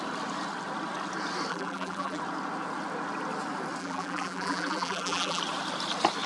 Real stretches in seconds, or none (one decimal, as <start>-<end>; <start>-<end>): 0.0-1.5; 2.2-3.8; 5.4-6.3